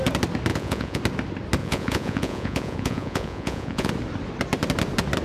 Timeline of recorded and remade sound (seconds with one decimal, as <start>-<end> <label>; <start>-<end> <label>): 0.0-0.5 recorded; 0.5-1.0 remade; 1.0-1.6 recorded; 1.6-3.9 remade; 3.9-5.2 recorded